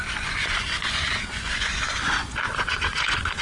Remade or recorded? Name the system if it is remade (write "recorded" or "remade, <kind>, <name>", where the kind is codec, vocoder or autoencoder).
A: remade, vocoder, Vocos